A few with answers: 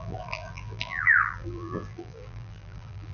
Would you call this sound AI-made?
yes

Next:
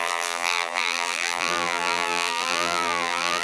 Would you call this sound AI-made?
yes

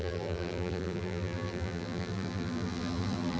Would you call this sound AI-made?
yes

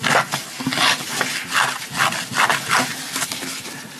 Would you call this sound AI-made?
no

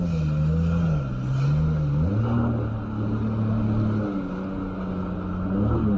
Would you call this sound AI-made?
no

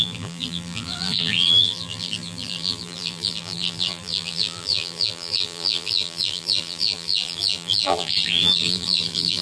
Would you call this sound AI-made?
yes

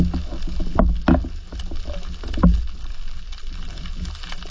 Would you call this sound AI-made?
no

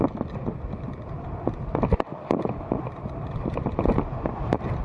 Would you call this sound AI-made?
no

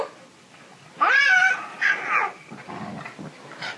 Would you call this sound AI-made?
yes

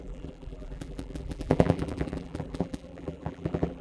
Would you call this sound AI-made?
yes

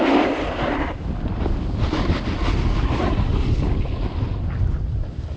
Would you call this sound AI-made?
no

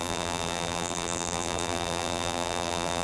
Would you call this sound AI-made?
yes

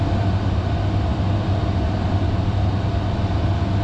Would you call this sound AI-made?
no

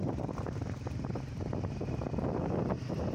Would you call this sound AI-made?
no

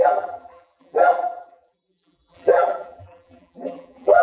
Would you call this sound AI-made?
yes